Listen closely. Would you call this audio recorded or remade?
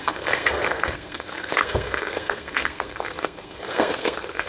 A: remade